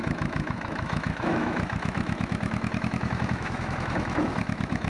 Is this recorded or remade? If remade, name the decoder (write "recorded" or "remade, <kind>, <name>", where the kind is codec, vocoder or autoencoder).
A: remade, autoencoder, DAC-VAE